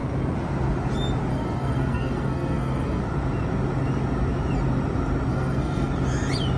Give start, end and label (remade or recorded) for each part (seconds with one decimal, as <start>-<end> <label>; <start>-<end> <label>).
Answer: 0.0-1.3 recorded; 1.3-3.0 remade; 3.0-5.3 recorded; 5.3-5.9 remade; 5.9-6.6 recorded